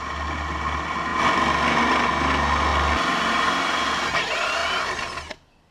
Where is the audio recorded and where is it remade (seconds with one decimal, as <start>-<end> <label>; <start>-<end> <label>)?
0.0-5.7 recorded